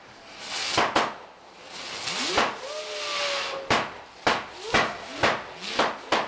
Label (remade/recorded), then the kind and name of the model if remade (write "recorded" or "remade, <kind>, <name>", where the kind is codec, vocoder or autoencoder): recorded